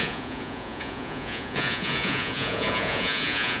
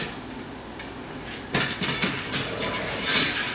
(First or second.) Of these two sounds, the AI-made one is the first